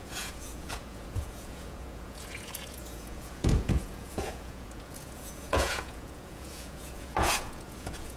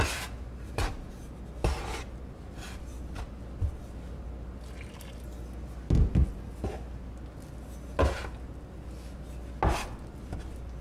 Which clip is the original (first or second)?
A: second